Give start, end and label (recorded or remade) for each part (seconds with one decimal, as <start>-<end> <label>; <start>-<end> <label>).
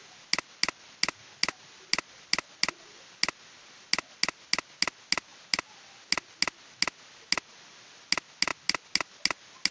0.0-9.7 recorded